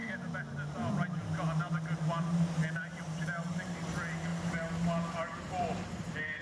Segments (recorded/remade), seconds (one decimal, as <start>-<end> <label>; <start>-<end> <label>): 0.0-0.9 remade; 0.9-6.4 recorded